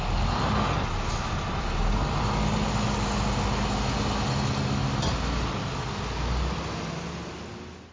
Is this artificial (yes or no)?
no